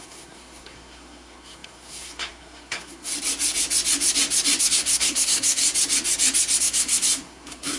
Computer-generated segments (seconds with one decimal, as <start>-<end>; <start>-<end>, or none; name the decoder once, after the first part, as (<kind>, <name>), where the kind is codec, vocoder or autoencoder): 0.0-3.1 (codec, SNAC); 4.6-5.6; 6.6-7.8